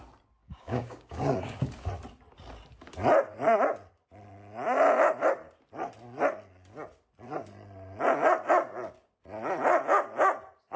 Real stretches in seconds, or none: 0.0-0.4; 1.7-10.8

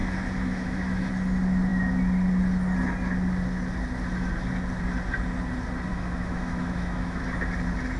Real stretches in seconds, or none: 1.1-5.9; 7.2-8.0